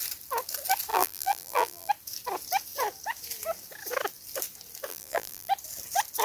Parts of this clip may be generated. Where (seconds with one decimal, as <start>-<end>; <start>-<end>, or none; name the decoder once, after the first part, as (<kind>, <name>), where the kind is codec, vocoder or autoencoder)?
0.9-1.9 (vocoder, BigVGAN v2); 4.9-5.5